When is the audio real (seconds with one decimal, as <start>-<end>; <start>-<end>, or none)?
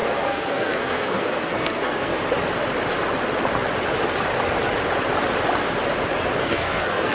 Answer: 2.1-6.4